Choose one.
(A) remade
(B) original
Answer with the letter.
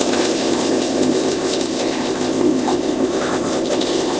A